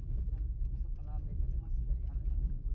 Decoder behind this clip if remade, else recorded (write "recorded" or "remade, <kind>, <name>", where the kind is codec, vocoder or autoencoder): recorded